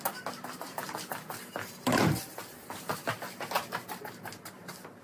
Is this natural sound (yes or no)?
yes